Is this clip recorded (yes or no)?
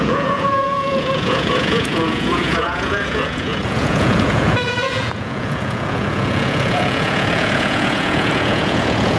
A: no